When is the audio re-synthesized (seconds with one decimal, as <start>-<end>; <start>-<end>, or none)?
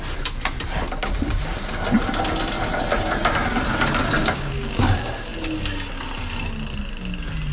4.2-5.3